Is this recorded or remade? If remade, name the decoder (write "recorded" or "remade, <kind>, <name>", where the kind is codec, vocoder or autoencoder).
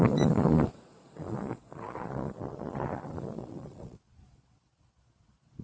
remade, vocoder, Vocos